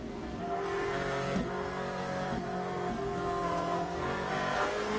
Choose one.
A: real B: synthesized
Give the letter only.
B